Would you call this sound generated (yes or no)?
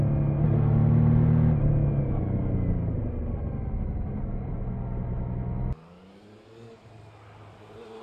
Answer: no